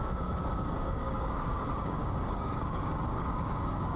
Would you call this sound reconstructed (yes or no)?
yes